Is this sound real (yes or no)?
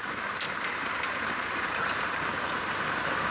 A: no